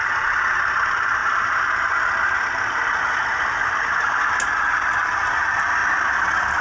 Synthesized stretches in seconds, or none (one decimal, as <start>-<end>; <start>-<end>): none